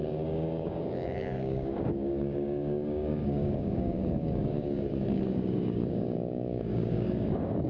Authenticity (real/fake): fake